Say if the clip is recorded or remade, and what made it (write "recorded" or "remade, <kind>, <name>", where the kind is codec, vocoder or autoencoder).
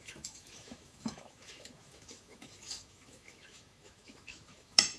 remade, autoencoder, DAC-VAE